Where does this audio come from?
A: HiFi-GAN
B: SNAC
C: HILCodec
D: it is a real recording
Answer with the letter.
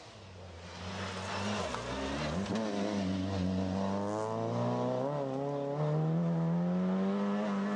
D